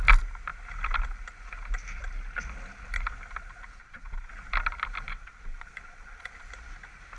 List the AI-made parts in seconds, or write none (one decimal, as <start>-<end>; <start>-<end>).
3.8-4.3; 5.1-6.5